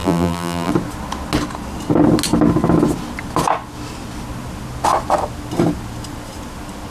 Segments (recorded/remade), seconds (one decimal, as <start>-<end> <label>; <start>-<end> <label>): 0.0-0.7 remade; 0.7-6.9 recorded